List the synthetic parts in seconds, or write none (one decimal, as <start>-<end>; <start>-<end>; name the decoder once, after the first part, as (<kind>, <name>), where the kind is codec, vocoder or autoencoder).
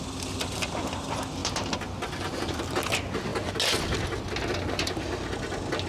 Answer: none